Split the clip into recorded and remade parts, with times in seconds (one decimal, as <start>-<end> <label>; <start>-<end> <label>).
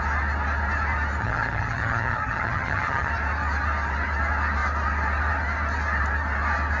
0.0-1.2 recorded; 1.2-3.1 remade; 3.1-6.8 recorded